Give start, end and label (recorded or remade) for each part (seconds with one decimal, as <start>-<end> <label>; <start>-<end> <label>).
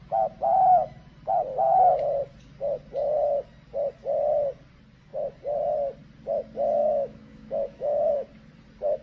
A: 0.0-6.8 recorded; 6.8-8.1 remade; 8.1-9.0 recorded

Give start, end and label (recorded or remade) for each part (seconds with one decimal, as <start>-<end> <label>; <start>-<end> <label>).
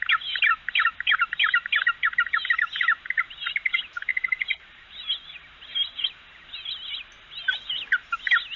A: 0.0-8.6 recorded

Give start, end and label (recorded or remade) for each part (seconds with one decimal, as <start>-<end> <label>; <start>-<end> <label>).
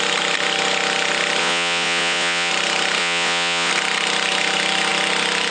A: 0.0-1.4 recorded; 1.4-2.5 remade; 2.5-3.0 recorded; 3.0-3.7 remade; 3.7-5.5 recorded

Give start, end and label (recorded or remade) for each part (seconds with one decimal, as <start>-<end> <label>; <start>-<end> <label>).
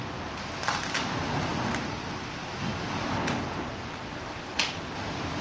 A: 0.0-5.4 recorded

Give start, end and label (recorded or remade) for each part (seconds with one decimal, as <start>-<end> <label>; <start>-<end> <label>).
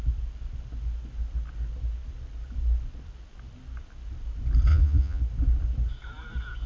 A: 0.0-4.7 recorded; 4.7-5.2 remade; 5.2-6.7 recorded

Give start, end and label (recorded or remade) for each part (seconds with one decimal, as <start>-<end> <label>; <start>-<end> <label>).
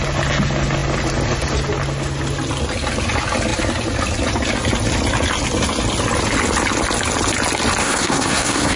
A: 0.0-7.8 recorded; 7.8-8.8 remade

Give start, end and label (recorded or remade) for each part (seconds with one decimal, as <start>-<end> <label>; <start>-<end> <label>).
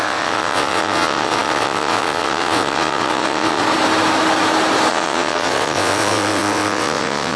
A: 0.0-3.6 remade; 3.6-4.9 recorded; 4.9-7.4 remade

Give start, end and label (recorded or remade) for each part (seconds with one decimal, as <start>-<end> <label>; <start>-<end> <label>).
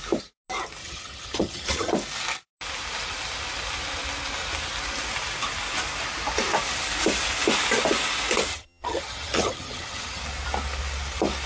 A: 0.0-0.8 recorded; 0.8-1.9 remade; 1.9-8.5 recorded; 8.5-10.2 remade; 10.2-11.5 recorded